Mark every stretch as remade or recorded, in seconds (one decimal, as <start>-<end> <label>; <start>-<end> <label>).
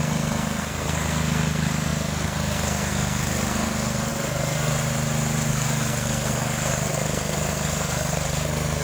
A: 0.0-4.7 remade; 4.7-5.5 recorded; 5.5-8.8 remade